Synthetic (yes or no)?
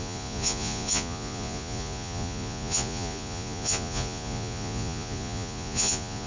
yes